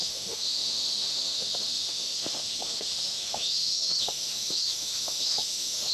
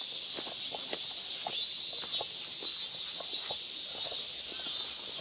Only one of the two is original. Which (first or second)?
second